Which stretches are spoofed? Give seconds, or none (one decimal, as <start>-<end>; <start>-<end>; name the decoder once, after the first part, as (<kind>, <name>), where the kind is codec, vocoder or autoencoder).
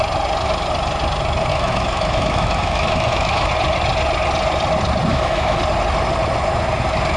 1.5-3.5 (autoencoder, DAC-VAE); 5.1-5.6